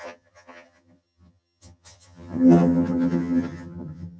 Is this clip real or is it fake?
fake